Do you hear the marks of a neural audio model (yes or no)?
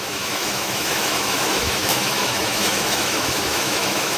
yes